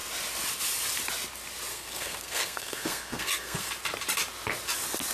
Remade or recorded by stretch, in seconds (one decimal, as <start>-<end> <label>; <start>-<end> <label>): 0.0-1.7 recorded; 1.7-3.7 remade; 3.7-5.1 recorded

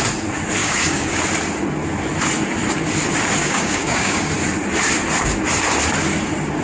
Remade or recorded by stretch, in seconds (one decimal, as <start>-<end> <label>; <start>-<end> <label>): 0.0-0.6 recorded; 0.6-1.2 remade; 1.2-3.4 recorded; 3.4-4.3 remade; 4.3-6.6 recorded

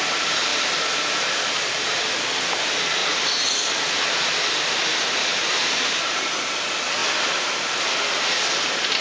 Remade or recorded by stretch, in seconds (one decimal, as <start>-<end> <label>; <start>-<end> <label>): 0.0-3.0 recorded; 3.0-3.5 remade; 3.5-5.3 recorded; 5.3-6.3 remade; 6.3-7.0 recorded; 7.0-7.5 remade; 7.5-9.0 recorded

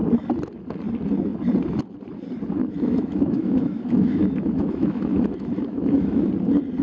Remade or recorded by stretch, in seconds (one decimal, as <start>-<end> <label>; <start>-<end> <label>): 0.0-2.6 recorded; 2.6-6.3 remade; 6.3-6.8 recorded